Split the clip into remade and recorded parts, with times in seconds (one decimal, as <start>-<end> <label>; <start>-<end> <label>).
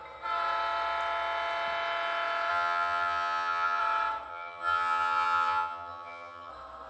0.0-2.5 recorded; 2.5-3.8 remade; 3.8-4.3 recorded; 4.3-6.5 remade; 6.5-6.9 recorded